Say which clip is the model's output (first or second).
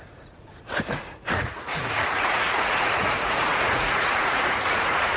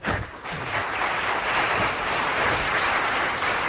first